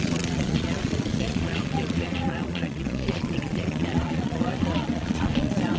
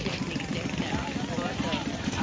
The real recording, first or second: second